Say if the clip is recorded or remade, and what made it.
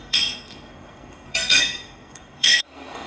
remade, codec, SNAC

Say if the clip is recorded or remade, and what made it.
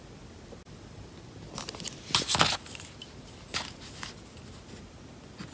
recorded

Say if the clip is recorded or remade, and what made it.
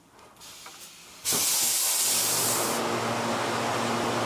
recorded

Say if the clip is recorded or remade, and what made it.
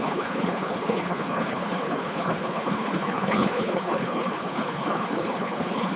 remade, codec, HILCodec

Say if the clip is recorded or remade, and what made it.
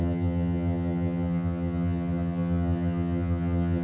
remade, vocoder, HiFi-GAN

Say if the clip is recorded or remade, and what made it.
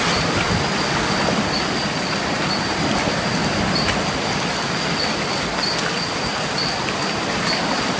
recorded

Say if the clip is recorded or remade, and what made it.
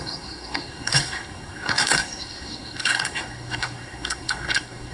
remade, codec, SNAC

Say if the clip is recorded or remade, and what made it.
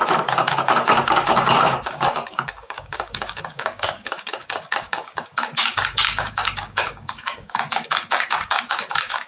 remade, codec, DAC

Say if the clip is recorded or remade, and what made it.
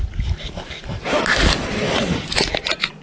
recorded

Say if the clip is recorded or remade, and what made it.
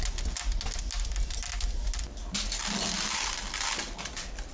recorded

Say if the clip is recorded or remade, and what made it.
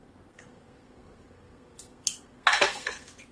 remade, codec, SNAC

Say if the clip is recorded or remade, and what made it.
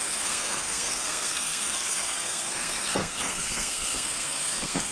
remade, codec, SNAC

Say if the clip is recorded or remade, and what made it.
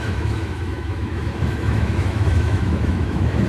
remade, autoencoder, DAC-VAE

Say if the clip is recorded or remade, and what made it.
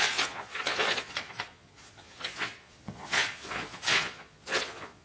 remade, vocoder, Vocos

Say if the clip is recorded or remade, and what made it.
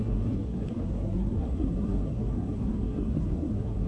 remade, codec, SNAC